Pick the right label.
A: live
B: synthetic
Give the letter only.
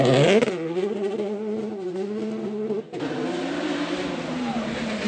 A